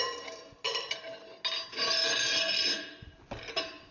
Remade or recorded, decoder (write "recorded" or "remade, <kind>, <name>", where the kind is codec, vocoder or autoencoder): recorded